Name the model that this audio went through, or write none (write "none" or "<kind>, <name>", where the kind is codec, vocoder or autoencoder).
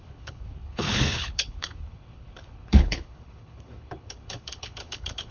codec, HILCodec